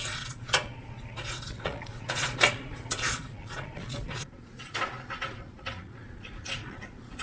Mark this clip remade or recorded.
remade